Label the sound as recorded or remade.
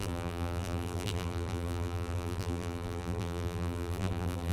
remade